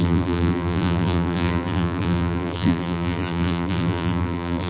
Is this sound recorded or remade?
remade